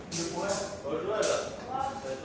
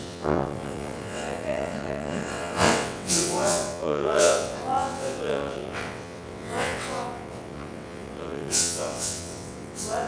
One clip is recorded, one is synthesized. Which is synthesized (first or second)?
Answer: second